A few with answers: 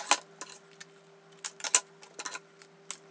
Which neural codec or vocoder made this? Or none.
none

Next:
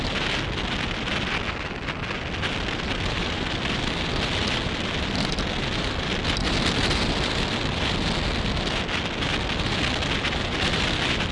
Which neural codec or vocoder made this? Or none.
none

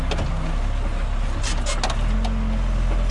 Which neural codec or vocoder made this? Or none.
none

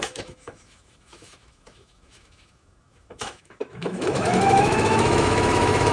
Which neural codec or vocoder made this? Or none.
autoencoder, DAC-VAE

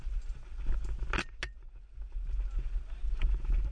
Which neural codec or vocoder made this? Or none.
none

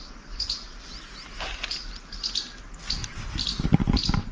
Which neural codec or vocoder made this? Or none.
none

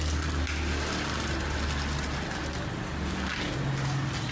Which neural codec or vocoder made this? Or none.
none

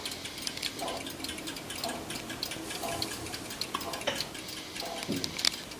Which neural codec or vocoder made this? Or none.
none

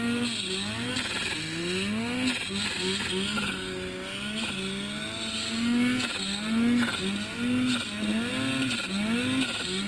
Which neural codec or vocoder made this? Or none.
none